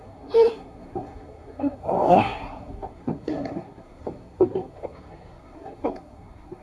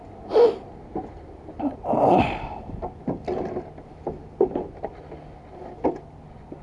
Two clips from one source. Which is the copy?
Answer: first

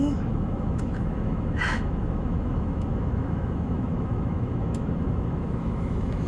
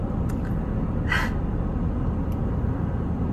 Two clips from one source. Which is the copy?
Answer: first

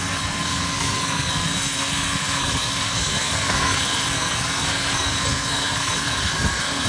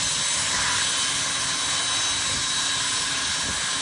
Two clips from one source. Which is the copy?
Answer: first